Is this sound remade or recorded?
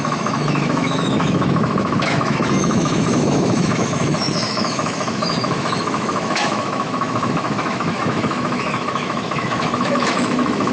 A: remade